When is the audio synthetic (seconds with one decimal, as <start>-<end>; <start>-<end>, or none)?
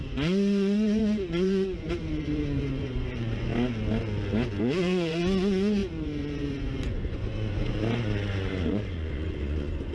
0.0-3.5; 4.6-9.9